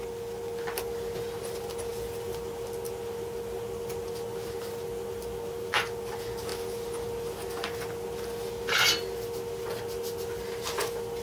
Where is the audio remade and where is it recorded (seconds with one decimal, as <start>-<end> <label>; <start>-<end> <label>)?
0.0-11.2 recorded